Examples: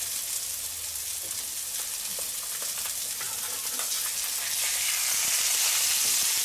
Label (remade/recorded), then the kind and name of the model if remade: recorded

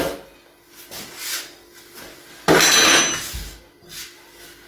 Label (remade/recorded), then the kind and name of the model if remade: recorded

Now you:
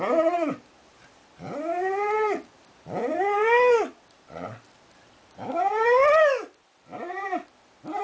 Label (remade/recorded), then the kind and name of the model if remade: recorded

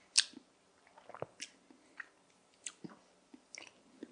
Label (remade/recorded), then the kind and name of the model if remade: recorded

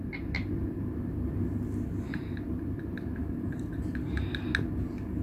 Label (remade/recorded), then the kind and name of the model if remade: recorded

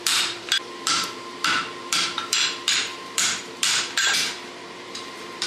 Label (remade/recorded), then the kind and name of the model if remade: remade, vocoder, BigVGAN v2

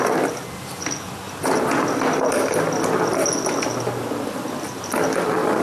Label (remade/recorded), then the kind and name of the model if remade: recorded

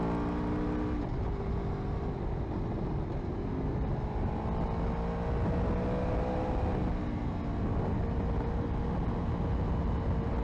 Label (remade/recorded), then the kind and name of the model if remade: recorded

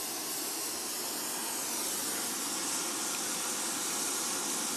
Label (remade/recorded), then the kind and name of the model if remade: recorded